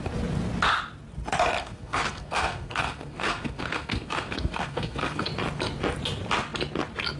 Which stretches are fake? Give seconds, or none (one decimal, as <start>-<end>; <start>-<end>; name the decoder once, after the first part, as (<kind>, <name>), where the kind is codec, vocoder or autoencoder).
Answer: 1.6-5.3 (codec, SNAC)